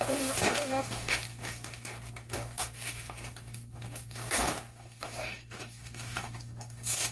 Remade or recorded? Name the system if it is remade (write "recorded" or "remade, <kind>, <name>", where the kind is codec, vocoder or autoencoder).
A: remade, codec, DAC